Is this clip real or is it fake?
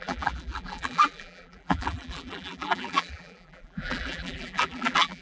fake